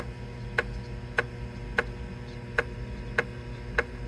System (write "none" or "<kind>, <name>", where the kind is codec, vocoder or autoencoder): none